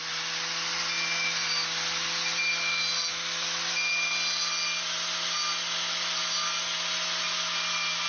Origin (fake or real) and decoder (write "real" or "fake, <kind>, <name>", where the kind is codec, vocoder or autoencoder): real